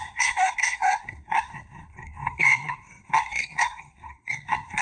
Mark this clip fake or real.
fake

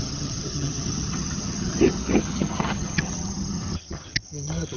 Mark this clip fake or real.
fake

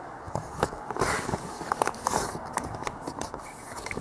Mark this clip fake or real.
fake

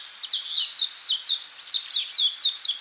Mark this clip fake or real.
real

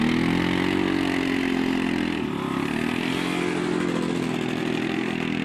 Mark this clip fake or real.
real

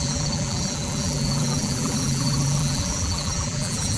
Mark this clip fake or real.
fake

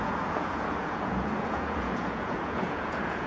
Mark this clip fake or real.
fake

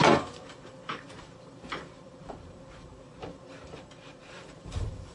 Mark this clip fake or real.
fake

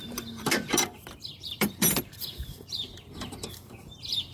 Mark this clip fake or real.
fake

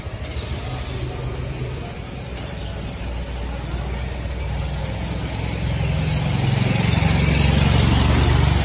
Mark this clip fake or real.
real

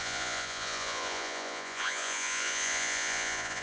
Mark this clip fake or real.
fake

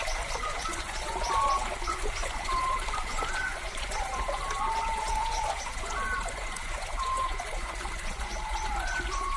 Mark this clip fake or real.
fake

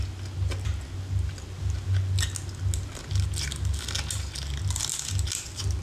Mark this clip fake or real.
real